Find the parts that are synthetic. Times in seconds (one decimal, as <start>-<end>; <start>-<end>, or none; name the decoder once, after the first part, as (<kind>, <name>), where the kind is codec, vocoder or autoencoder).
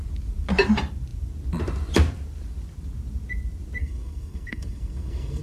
3.8-5.4 (codec, SNAC)